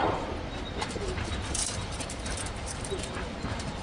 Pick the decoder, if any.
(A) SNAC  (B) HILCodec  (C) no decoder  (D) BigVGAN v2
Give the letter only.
D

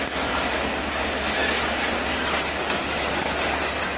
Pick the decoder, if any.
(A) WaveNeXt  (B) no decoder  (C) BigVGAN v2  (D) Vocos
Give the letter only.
B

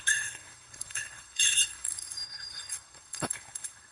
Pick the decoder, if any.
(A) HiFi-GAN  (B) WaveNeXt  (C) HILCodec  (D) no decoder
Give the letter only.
C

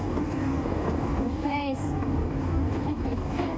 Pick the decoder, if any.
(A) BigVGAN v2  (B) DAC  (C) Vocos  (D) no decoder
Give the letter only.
B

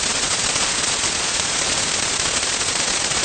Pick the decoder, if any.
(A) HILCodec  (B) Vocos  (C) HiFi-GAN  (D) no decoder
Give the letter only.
B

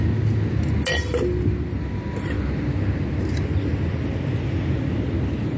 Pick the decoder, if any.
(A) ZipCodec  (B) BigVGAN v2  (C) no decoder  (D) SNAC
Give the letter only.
C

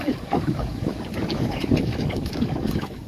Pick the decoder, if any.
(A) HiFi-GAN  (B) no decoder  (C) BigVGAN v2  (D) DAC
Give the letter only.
D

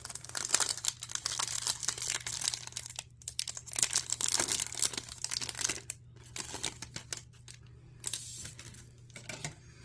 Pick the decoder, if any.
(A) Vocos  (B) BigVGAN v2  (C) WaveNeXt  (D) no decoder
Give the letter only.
D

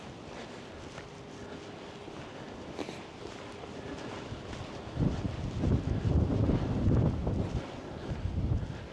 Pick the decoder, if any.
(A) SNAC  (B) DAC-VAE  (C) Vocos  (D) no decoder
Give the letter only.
D